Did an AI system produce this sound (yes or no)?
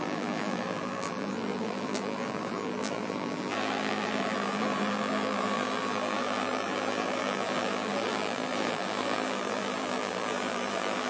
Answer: yes